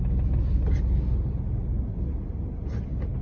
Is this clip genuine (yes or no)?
yes